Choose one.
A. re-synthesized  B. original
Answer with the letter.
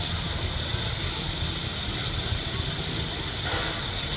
B